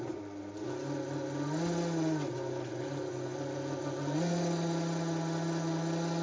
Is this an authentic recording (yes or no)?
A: yes